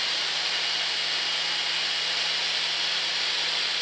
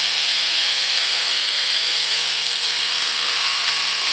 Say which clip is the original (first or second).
first